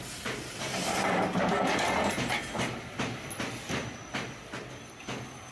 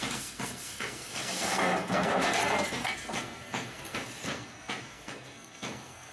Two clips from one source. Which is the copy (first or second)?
second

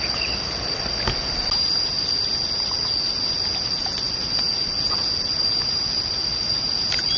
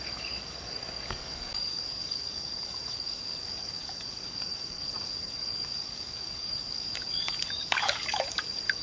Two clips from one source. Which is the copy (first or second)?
second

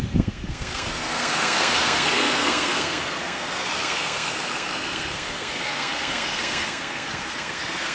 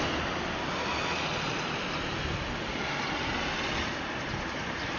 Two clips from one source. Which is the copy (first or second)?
first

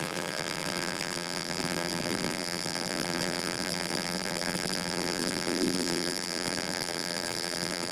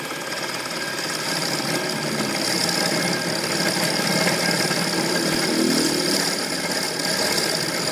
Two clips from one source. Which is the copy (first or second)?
first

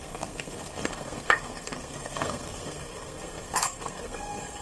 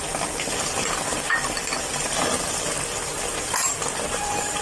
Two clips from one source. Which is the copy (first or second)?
first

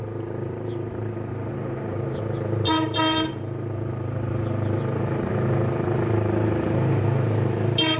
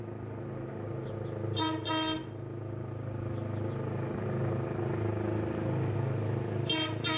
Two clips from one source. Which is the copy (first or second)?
first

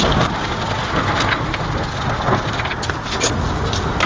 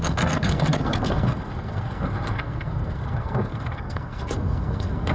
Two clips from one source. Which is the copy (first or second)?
second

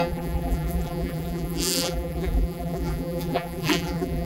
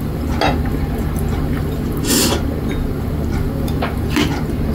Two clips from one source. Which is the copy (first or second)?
first